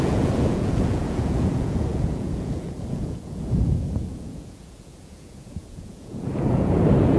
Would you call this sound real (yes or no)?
no